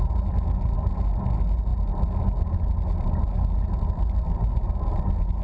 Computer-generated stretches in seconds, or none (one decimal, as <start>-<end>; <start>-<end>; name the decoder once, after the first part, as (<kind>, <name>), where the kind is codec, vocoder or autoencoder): none